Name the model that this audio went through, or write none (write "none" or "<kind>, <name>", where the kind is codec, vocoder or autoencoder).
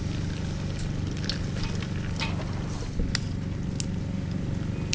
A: none